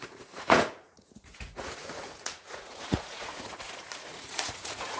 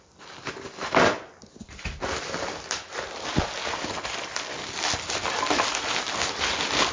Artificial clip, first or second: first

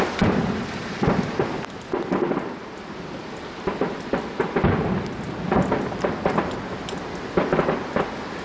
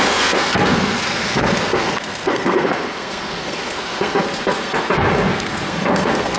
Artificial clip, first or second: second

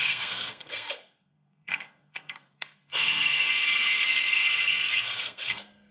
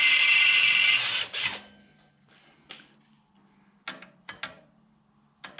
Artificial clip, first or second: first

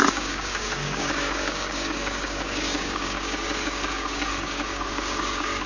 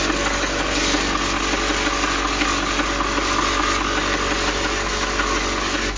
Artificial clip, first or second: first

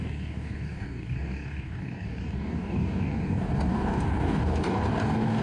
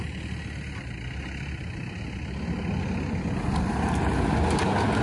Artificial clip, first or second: first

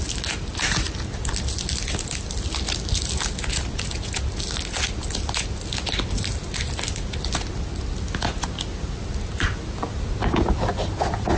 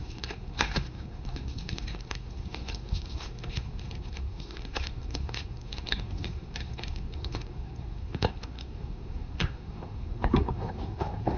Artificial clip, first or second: second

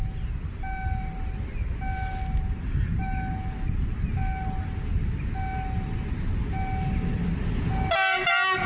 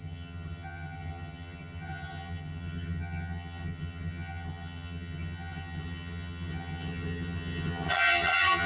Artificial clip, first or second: second